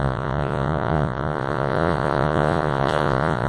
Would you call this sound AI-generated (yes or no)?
yes